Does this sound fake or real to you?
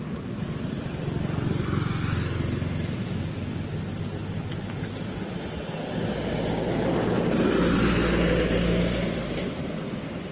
real